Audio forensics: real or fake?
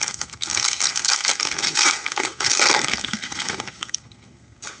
fake